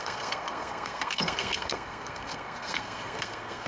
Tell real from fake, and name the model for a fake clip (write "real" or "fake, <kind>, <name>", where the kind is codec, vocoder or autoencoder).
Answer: fake, codec, SNAC